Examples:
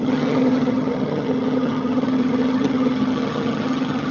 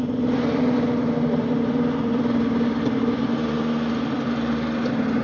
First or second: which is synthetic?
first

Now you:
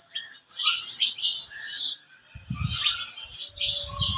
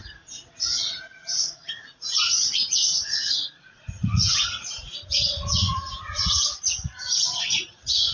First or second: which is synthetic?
second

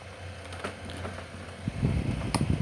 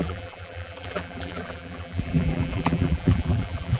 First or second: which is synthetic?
second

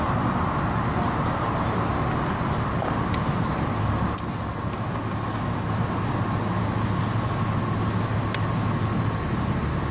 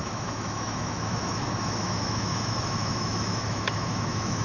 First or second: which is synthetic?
second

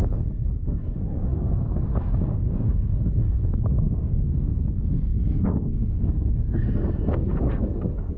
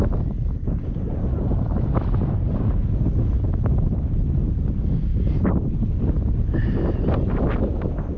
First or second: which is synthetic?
first